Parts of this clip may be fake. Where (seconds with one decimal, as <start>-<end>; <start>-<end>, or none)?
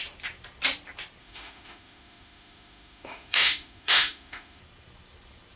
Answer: 1.2-4.6